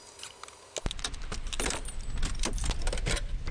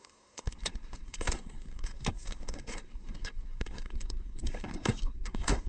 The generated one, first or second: second